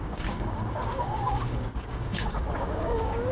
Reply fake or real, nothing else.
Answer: fake